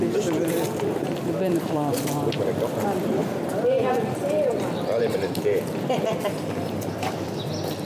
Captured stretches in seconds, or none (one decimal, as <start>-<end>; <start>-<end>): none